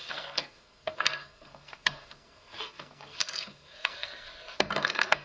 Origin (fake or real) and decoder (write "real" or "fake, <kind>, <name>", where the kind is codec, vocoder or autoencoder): fake, codec, SNAC